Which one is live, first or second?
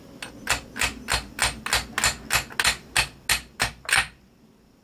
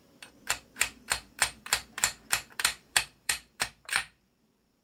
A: first